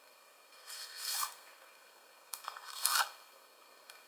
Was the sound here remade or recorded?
remade